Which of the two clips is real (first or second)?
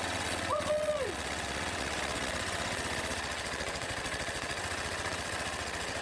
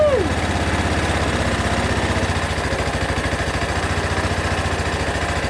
second